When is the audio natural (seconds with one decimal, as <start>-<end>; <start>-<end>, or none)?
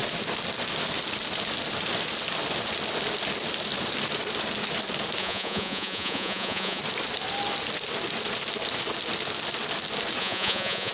0.0-5.2; 6.8-10.2